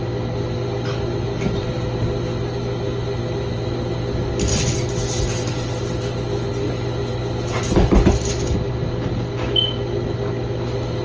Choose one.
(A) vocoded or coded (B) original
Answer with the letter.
B